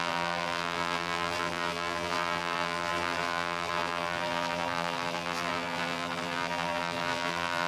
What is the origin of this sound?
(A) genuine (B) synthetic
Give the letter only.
B